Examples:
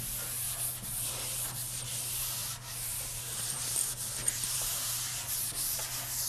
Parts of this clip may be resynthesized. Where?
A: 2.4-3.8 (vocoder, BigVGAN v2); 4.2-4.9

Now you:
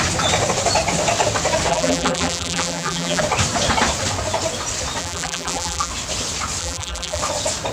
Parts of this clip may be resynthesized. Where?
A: 1.7-3.2 (vocoder, BigVGAN v2); 5.0-5.9; 6.6-7.2

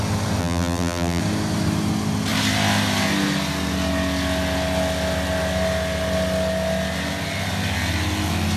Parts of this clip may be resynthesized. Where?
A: 0.4-1.2 (vocoder, BigVGAN v2)

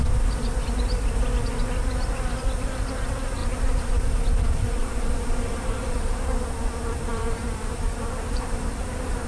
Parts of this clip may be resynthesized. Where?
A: 3.4-4.1 (vocoder, BigVGAN v2); 4.8-6.1; 7.1-9.3